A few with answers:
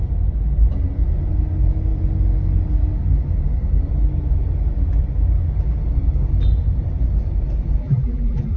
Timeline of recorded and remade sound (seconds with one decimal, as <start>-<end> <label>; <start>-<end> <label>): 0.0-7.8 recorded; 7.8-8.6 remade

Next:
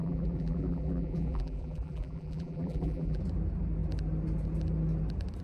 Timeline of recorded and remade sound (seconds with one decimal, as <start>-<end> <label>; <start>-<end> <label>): 0.0-3.2 remade; 3.2-5.4 recorded

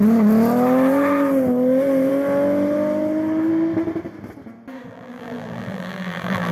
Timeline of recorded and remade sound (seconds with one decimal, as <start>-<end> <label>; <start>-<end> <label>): 0.0-4.9 recorded; 4.9-6.5 remade

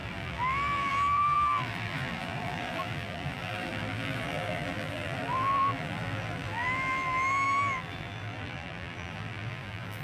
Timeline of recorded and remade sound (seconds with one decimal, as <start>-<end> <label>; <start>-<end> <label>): 0.0-10.0 remade

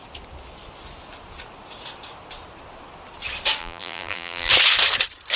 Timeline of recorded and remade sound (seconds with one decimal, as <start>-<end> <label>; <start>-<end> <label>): 0.0-3.6 recorded; 3.6-4.5 remade; 4.5-5.4 recorded

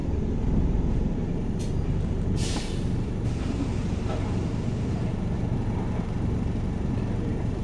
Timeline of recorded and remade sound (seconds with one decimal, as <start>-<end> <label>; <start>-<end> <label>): 0.0-0.6 recorded; 0.6-7.6 remade

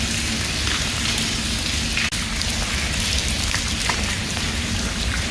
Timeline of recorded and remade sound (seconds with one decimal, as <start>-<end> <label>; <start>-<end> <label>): 0.0-3.2 recorded; 3.2-4.7 remade; 4.7-5.3 recorded

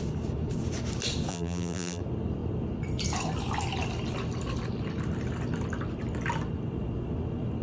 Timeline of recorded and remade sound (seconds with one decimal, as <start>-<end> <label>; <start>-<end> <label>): 0.0-1.3 recorded; 1.3-2.0 remade; 2.0-7.6 recorded